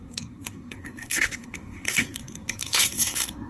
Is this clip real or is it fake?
fake